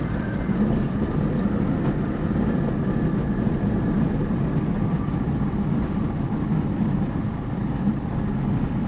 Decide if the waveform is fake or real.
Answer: real